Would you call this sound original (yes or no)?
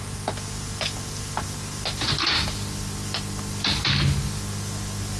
yes